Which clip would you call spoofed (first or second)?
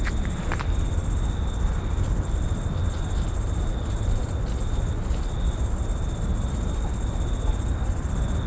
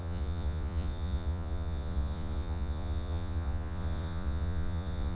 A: second